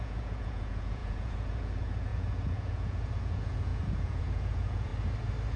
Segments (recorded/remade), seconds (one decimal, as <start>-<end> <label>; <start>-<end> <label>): 0.0-4.9 remade; 4.9-5.6 recorded